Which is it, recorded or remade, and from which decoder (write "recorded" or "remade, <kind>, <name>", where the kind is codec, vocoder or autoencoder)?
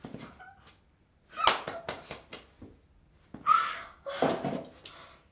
recorded